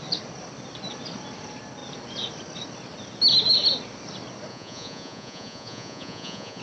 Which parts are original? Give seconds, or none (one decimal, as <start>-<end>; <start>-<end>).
0.0-4.5